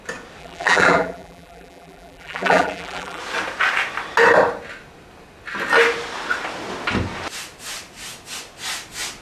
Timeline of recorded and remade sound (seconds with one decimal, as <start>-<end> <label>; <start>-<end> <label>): 0.0-0.4 recorded; 0.4-3.2 remade; 3.2-9.2 recorded